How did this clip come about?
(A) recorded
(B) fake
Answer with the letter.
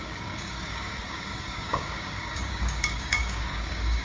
B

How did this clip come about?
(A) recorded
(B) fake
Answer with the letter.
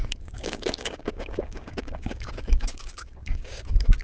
B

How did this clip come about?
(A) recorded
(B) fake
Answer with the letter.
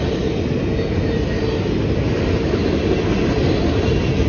A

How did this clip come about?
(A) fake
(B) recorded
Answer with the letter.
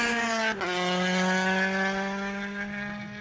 B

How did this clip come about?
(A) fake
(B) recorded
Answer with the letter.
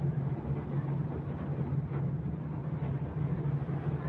B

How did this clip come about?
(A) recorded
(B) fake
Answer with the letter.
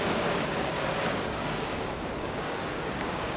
B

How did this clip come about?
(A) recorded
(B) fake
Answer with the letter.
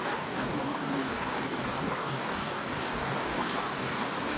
B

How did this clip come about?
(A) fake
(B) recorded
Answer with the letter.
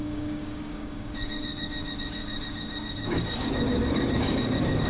A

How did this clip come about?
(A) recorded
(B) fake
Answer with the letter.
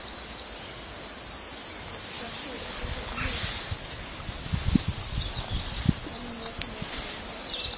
A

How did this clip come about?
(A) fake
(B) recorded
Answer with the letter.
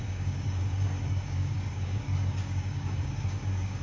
A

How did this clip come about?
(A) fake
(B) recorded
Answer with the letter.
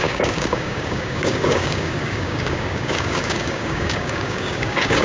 A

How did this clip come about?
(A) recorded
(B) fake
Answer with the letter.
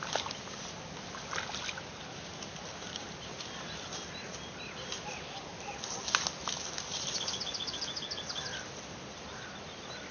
A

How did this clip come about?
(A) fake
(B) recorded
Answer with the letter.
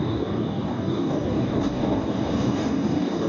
A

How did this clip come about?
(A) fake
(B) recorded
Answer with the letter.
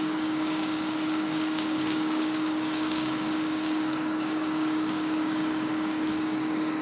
A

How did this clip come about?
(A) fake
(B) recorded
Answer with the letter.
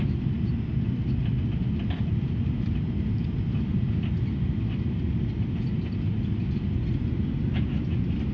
B